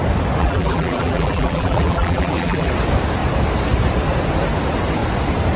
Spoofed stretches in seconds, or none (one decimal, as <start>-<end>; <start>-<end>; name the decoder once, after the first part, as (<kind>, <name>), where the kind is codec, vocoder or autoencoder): 0.4-2.7 (vocoder, BigVGAN v2)